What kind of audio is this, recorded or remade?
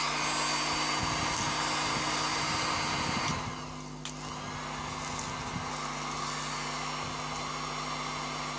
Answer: recorded